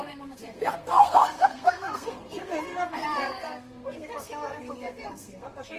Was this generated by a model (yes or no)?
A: yes